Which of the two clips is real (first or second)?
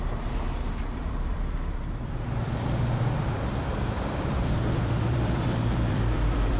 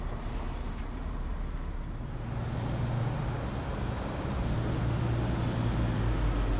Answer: second